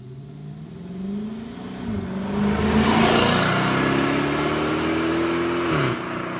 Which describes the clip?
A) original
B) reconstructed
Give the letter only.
A